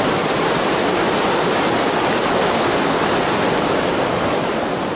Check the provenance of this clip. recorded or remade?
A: recorded